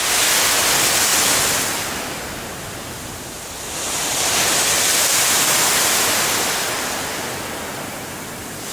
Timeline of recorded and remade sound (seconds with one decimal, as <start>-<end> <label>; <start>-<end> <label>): 0.0-8.7 recorded